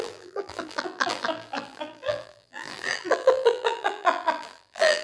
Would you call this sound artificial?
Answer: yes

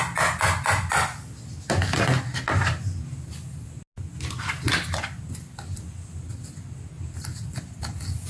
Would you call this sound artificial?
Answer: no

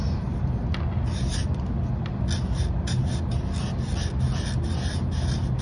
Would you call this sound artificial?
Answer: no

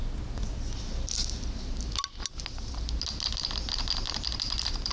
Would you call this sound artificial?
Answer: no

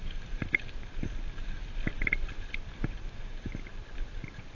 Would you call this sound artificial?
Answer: no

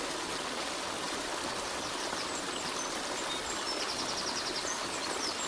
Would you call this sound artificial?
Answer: no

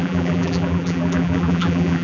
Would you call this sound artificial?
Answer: yes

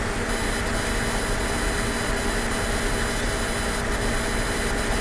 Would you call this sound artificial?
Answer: no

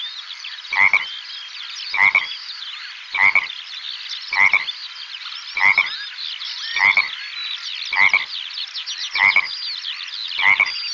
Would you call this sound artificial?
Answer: no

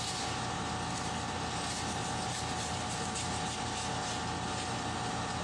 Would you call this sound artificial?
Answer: yes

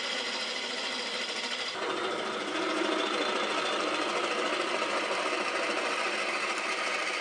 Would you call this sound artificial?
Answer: yes